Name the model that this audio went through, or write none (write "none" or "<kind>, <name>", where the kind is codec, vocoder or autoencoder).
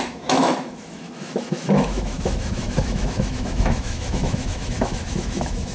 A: autoencoder, DAC-VAE